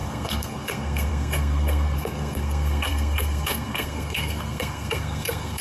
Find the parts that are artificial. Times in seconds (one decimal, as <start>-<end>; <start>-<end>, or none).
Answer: 0.0-5.6